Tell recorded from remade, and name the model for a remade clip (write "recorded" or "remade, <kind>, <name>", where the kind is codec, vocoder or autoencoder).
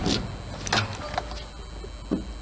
recorded